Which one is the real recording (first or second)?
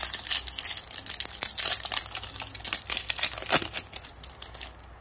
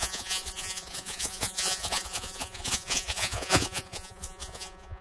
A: first